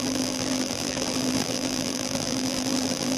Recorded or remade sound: remade